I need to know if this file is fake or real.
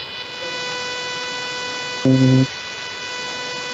real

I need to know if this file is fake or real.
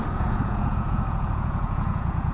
fake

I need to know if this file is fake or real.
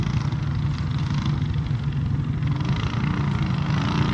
real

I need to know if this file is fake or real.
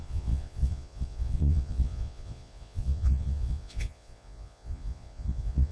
fake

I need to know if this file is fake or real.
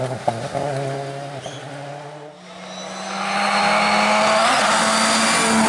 real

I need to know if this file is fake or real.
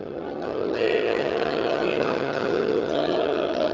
fake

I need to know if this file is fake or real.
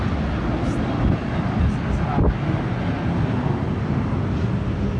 real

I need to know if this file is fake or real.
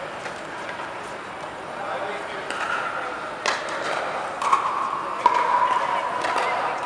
real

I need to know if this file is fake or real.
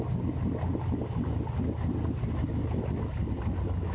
real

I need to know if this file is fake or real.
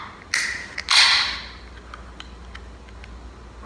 real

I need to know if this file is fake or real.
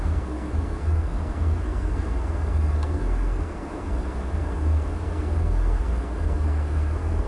fake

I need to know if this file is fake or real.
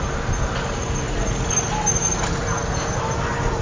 real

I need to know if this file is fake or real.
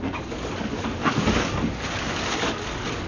fake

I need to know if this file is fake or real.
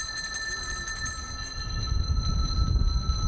real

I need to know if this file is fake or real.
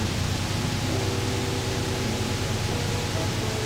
real